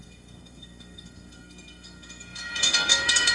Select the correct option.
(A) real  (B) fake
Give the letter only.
B